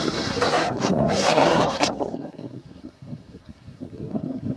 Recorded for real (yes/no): no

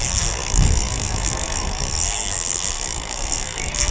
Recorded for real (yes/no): no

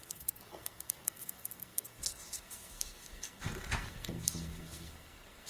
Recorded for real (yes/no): no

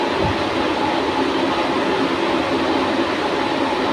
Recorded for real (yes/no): yes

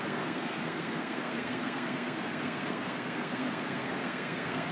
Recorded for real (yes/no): no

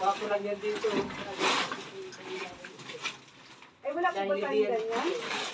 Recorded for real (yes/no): yes